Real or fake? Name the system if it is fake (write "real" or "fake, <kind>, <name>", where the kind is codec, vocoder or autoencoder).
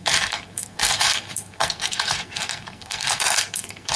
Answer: fake, codec, SNAC